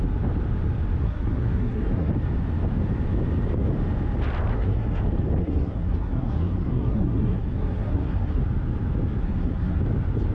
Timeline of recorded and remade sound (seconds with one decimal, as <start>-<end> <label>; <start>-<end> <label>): 0.0-1.0 recorded; 1.0-2.1 remade; 2.1-4.5 recorded; 4.5-5.0 remade; 5.0-5.4 recorded; 5.4-8.4 remade; 8.4-9.2 recorded; 9.2-9.8 remade; 9.8-10.3 recorded